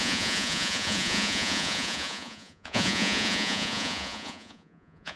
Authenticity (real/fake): fake